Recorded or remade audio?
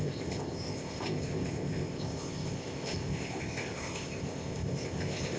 remade